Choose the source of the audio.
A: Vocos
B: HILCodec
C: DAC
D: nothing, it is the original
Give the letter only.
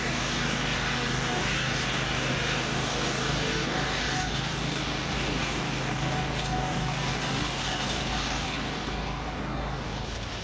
C